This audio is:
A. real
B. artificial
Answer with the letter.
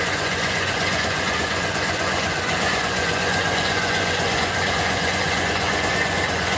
B